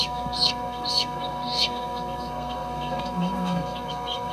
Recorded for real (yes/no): no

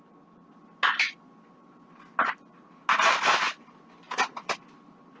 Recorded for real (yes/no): yes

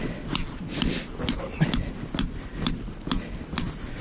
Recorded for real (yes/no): yes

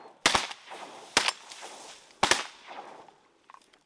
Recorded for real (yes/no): yes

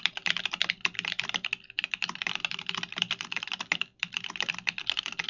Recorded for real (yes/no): yes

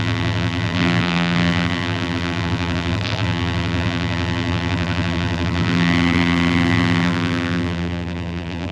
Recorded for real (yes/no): no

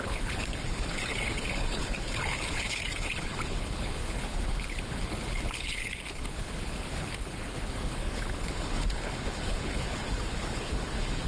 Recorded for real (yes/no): no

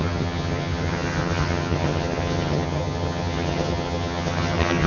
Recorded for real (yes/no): no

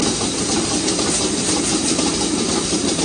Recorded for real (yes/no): yes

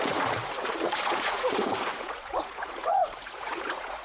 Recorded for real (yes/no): no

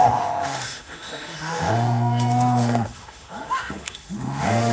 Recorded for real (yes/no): no